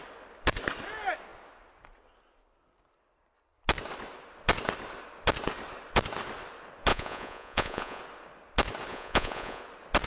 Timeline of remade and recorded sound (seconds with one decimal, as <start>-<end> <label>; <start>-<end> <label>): 0.0-6.9 recorded; 6.9-8.0 remade; 8.0-8.9 recorded; 8.9-9.6 remade; 9.6-10.1 recorded

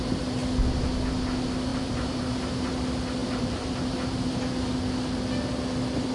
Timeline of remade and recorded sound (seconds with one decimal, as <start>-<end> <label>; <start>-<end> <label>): 0.0-1.7 recorded; 1.7-2.7 remade; 2.7-3.2 recorded; 3.2-4.3 remade; 4.3-6.1 recorded

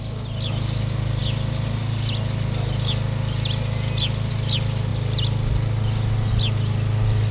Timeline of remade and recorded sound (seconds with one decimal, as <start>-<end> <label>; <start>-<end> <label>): 0.0-7.3 recorded

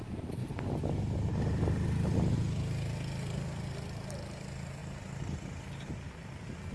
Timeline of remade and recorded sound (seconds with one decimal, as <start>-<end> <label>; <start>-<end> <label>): 0.0-6.7 recorded

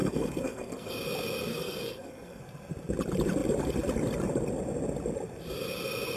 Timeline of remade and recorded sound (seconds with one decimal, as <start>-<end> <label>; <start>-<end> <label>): 0.0-0.9 remade; 0.9-1.5 recorded; 1.5-2.4 remade; 2.4-6.2 recorded

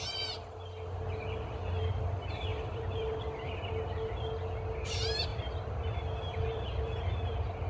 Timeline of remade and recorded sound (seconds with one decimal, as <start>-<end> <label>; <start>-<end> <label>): 0.0-2.5 recorded; 2.5-3.7 remade; 3.7-5.3 recorded; 5.3-7.0 remade; 7.0-7.7 recorded

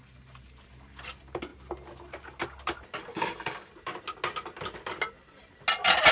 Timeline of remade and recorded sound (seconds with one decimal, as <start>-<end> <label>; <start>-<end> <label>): 0.0-3.1 recorded; 3.1-3.7 remade; 3.7-6.1 recorded

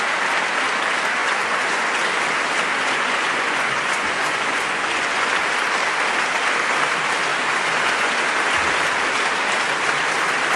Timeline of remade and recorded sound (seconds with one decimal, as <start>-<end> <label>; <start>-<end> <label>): 0.0-1.2 recorded; 1.2-2.2 remade; 2.2-2.8 recorded; 2.8-5.3 remade; 5.3-7.3 recorded; 7.3-8.1 remade; 8.1-10.6 recorded